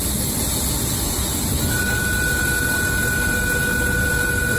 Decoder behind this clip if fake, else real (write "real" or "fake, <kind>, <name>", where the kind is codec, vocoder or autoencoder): real